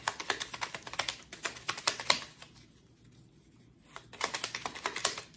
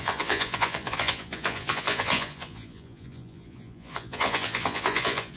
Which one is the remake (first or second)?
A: second